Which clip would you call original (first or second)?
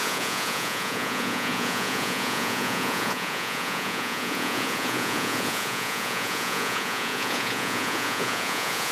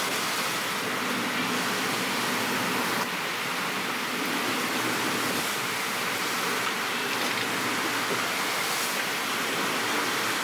second